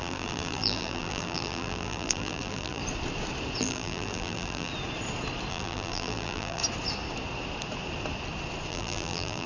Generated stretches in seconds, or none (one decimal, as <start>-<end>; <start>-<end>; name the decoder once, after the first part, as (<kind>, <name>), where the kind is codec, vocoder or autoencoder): 0.0-2.8 (vocoder, BigVGAN v2); 3.6-4.7; 5.5-6.6; 8.7-9.5